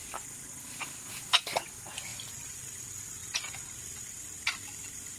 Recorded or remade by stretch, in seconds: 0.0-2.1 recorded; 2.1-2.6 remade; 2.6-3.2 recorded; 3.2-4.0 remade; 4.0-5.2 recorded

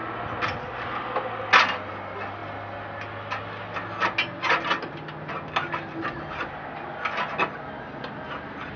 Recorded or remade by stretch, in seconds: 0.0-8.8 recorded

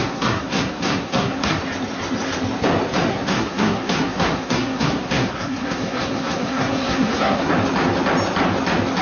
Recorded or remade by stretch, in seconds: 0.0-1.6 remade; 1.6-3.1 recorded; 3.1-7.5 remade; 7.5-9.0 recorded

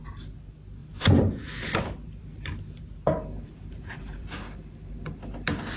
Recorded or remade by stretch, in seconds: 0.0-0.8 recorded; 0.8-4.3 remade; 4.3-5.8 recorded

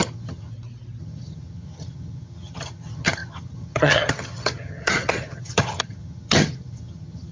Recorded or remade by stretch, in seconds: 0.0-0.5 remade; 0.5-1.0 recorded; 1.0-7.3 remade

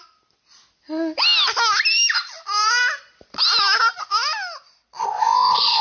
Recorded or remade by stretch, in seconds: 0.0-5.0 recorded; 5.0-5.8 remade

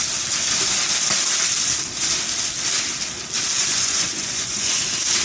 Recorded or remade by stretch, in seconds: 0.0-3.7 recorded; 3.7-4.8 remade; 4.8-5.2 recorded